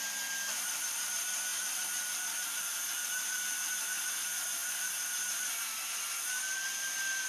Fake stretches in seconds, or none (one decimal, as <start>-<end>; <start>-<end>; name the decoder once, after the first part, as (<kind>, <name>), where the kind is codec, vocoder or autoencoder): none